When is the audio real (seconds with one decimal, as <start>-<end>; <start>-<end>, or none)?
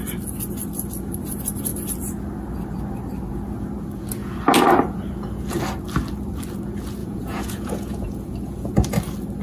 0.0-7.0; 8.7-9.4